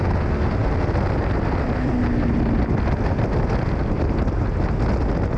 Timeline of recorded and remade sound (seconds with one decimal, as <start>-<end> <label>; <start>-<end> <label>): 0.0-5.4 recorded